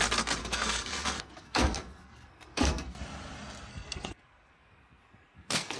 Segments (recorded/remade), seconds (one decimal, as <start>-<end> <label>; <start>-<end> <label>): 0.0-0.4 recorded; 0.4-3.0 remade; 3.0-3.7 recorded; 3.7-5.8 remade

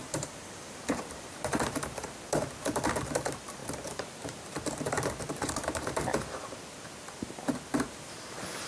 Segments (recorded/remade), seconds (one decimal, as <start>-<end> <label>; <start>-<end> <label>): 0.0-8.7 remade

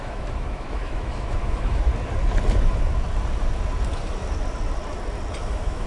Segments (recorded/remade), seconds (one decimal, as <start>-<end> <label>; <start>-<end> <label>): 0.0-1.9 remade; 1.9-5.4 recorded; 5.4-5.9 remade

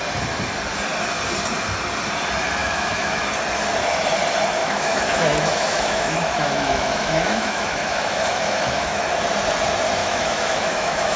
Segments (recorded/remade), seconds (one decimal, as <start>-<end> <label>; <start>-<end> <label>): 0.0-2.6 recorded; 2.6-3.2 remade; 3.2-4.6 recorded; 4.6-9.0 remade; 9.0-10.0 recorded; 10.0-11.2 remade

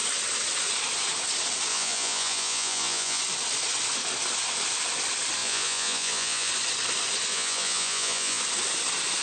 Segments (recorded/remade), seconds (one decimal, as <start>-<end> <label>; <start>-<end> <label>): 0.0-1.7 recorded; 1.7-3.2 remade; 3.2-5.4 recorded; 5.4-6.5 remade; 6.5-7.3 recorded; 7.3-8.4 remade; 8.4-9.2 recorded

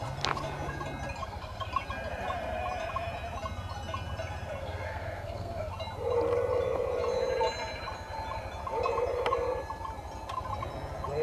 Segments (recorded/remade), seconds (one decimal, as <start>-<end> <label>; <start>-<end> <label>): 0.0-1.2 recorded; 1.2-1.7 remade; 1.7-4.6 recorded; 4.6-5.7 remade; 5.7-11.2 recorded

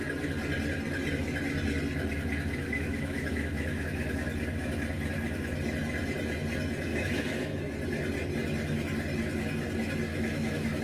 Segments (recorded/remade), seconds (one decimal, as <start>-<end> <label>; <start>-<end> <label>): 0.0-2.6 recorded; 2.6-4.1 remade; 4.1-6.9 recorded; 6.9-7.7 remade; 7.7-10.1 recorded; 10.1-10.8 remade

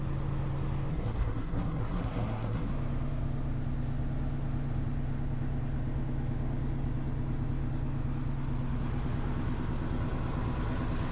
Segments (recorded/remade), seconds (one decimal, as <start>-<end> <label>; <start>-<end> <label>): 0.0-0.9 recorded; 0.9-2.7 remade; 2.7-11.1 recorded